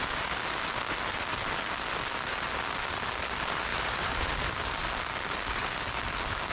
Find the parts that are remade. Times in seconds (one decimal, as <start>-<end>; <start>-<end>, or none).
3.7-4.3

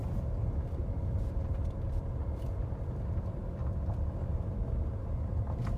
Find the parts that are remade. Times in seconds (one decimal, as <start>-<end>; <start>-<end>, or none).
1.1-3.4; 5.0-5.8

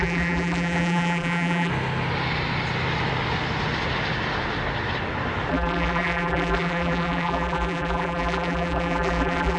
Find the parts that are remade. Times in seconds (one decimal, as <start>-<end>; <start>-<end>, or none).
0.0-1.7; 5.5-9.6

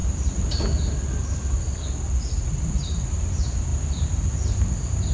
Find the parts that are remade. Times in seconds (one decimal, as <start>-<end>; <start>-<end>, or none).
3.1-5.1

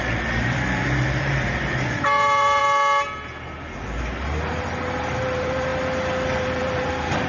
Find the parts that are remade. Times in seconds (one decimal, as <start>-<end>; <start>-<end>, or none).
0.0-2.6; 3.8-5.7; 6.4-7.3

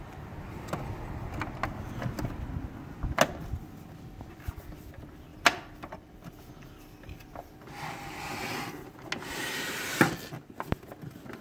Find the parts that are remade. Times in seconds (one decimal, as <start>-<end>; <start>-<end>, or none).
5.3-7.5

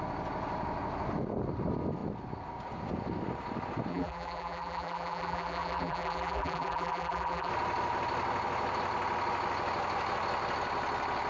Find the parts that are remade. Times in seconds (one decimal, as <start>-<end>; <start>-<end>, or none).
3.9-7.5

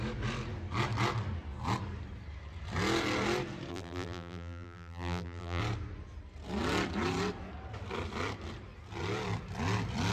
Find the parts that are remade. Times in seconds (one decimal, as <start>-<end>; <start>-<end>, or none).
3.7-5.6